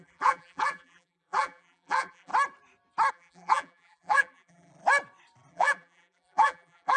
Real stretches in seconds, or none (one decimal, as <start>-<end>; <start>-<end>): 2.3-3.1; 4.7-5.5